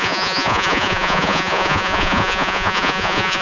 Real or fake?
fake